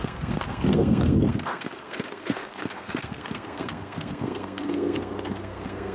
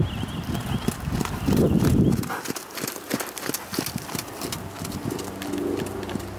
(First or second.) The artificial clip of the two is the first